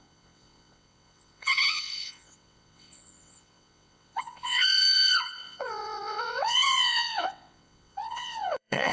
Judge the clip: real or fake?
fake